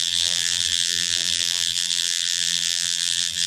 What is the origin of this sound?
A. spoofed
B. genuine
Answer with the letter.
A